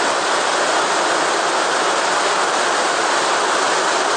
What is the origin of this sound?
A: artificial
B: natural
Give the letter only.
B